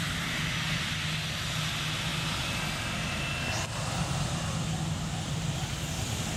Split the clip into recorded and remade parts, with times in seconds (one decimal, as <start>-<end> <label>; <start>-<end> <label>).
0.0-6.4 recorded